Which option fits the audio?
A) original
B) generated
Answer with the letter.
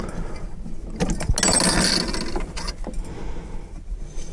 A